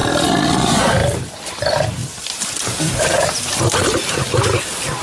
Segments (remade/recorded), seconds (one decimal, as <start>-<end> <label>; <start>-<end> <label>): 0.0-0.8 remade; 0.8-2.0 recorded; 2.0-2.8 remade; 2.8-5.0 recorded